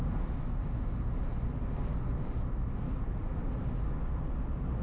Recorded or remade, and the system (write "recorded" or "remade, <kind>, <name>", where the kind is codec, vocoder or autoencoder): recorded